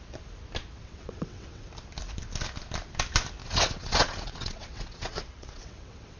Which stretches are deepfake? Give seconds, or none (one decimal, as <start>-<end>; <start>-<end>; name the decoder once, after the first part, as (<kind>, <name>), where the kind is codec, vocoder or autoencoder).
0.8-1.7 (vocoder, WaveNeXt); 3.4-6.2